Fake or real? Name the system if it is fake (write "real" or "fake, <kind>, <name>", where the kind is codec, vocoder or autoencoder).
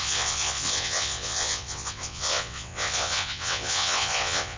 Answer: fake, vocoder, WaveNeXt